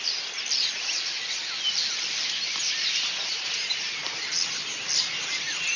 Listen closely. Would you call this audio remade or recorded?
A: recorded